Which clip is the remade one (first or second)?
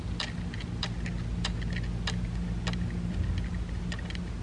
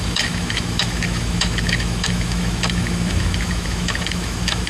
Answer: second